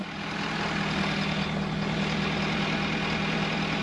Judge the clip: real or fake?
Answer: real